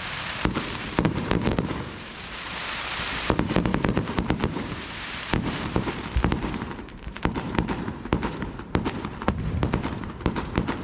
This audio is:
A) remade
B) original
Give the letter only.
A